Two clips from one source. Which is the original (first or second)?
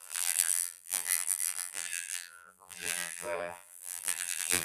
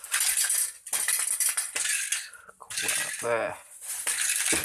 second